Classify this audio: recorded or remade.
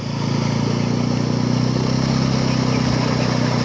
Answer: recorded